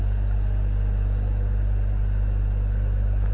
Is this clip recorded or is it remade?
recorded